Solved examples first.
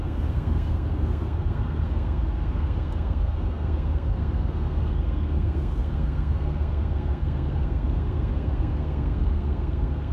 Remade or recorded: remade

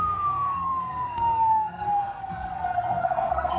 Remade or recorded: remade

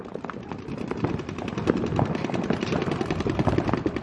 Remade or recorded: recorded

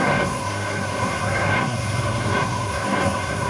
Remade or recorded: remade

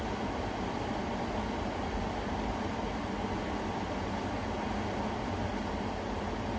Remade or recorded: recorded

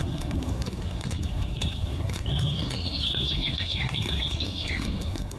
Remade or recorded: remade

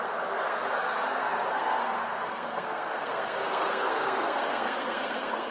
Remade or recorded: remade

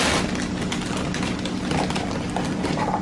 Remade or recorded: recorded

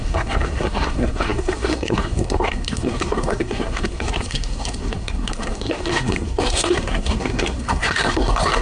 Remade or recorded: remade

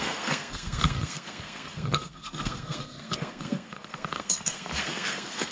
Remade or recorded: remade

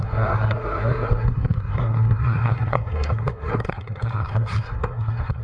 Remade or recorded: remade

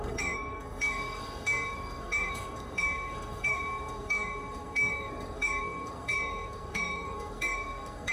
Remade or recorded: remade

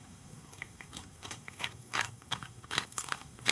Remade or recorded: remade